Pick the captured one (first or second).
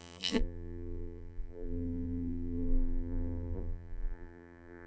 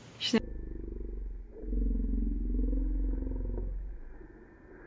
second